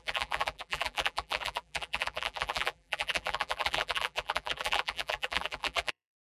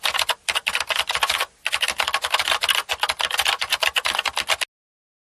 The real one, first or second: second